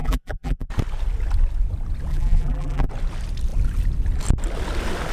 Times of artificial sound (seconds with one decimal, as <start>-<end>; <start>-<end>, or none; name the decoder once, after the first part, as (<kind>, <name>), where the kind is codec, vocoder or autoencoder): 0.0-0.7 (vocoder, BigVGAN v2); 2.1-2.9